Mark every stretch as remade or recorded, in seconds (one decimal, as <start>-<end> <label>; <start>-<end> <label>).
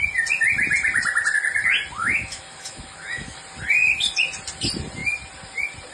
0.0-2.0 recorded; 2.0-3.4 remade; 3.4-5.9 recorded